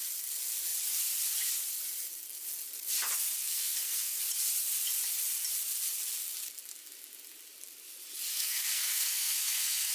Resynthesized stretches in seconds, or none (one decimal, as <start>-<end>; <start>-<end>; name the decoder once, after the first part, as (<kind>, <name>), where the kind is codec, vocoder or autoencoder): 3.4-4.2 (codec, SNAC); 8.3-9.9

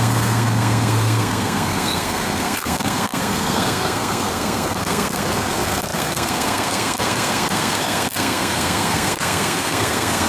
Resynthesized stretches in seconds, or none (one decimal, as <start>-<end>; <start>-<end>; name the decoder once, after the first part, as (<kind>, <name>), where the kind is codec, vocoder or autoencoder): 0.0-10.3 (codec, SNAC)

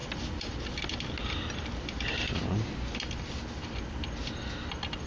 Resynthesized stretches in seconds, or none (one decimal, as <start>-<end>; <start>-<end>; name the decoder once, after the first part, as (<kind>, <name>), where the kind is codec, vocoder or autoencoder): none

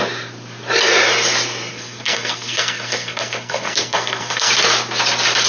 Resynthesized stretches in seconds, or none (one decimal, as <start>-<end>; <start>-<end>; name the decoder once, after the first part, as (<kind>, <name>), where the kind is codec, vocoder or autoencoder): 1.7-4.5 (codec, SNAC)

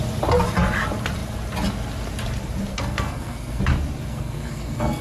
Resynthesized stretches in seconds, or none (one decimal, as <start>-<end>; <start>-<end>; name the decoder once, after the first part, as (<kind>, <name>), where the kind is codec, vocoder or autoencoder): 2.7-3.6 (codec, SNAC); 4.1-5.0

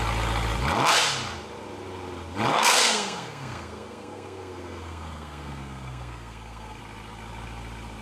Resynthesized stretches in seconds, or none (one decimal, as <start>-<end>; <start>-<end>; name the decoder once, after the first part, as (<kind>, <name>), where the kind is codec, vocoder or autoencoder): 2.5-6.8 (codec, SNAC)

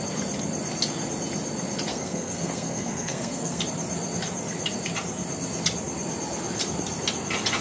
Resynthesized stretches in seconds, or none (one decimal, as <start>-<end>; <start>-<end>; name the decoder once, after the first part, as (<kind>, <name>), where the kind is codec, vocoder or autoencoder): 1.9-3.6 (codec, SNAC)